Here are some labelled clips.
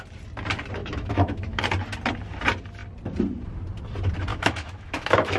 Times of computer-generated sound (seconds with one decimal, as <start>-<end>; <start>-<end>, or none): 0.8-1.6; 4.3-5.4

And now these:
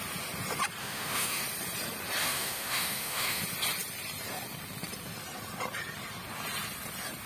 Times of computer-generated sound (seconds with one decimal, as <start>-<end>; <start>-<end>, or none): 0.8-1.4; 2.2-3.4

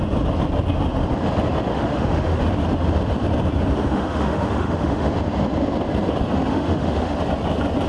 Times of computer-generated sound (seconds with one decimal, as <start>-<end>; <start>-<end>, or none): 1.7-2.4; 3.9-5.1; 6.5-7.2

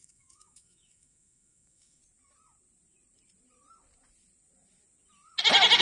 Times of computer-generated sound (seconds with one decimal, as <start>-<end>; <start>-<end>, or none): 0.0-2.0

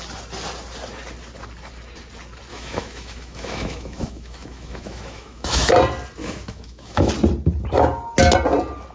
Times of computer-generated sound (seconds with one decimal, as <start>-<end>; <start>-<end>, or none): 2.5-5.7; 6.2-7.1

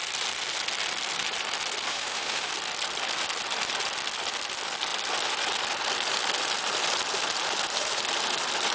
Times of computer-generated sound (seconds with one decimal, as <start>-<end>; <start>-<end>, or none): 1.9-2.5

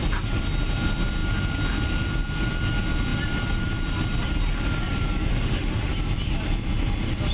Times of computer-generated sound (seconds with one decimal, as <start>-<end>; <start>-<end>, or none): 5.3-5.9

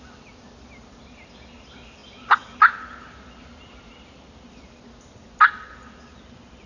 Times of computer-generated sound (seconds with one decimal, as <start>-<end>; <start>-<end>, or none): none